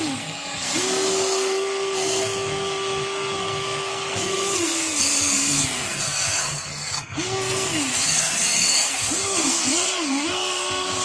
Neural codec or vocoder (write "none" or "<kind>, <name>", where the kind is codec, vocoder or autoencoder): codec, SNAC